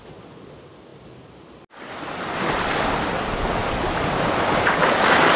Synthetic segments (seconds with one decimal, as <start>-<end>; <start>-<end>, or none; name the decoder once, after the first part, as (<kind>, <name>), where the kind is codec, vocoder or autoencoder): 0.9-3.1 (vocoder, BigVGAN v2)